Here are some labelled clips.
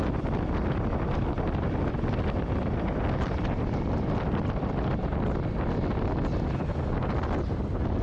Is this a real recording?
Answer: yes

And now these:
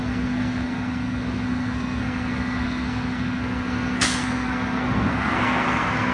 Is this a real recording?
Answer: no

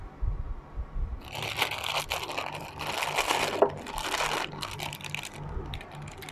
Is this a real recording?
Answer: yes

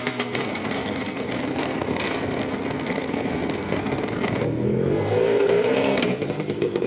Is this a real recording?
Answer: no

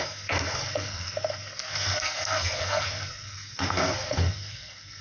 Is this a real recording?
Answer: no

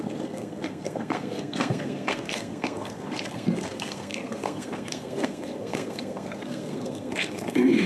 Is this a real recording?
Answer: no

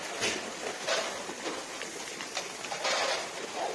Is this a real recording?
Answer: yes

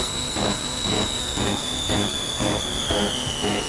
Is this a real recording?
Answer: no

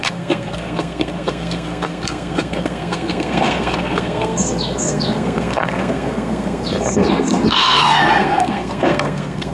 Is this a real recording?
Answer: no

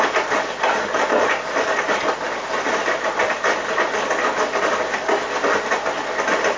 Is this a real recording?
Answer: yes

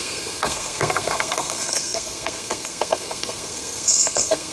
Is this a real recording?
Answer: no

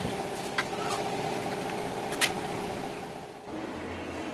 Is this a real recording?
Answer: yes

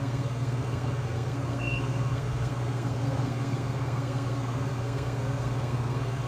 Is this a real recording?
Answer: no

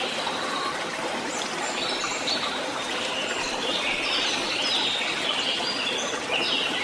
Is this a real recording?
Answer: yes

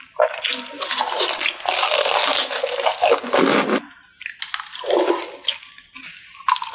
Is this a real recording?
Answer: yes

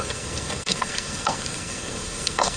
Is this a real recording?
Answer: no